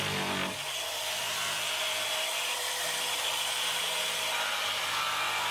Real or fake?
real